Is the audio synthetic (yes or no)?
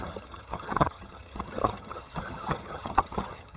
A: yes